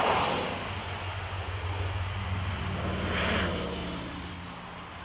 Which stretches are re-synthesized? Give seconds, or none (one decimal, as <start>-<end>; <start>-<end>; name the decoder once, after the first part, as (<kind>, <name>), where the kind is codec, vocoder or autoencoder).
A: 0.8-2.6 (vocoder, Vocos)